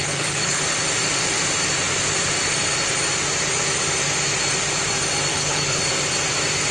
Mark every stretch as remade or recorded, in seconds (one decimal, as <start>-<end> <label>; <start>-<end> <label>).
0.0-0.6 remade; 0.6-5.3 recorded; 5.3-5.8 remade; 5.8-6.7 recorded